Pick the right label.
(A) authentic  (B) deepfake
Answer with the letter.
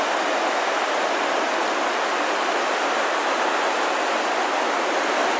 A